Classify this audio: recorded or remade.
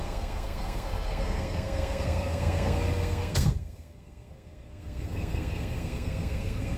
remade